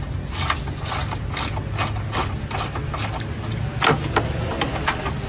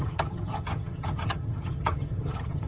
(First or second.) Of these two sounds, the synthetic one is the second